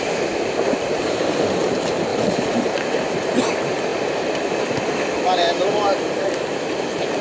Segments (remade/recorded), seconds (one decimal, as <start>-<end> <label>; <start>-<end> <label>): 0.0-7.2 remade